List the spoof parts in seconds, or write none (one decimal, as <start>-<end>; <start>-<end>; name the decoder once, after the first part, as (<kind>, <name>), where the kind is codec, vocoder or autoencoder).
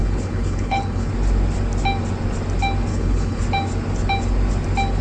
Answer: 0.0-1.1 (codec, HILCodec); 2.9-3.4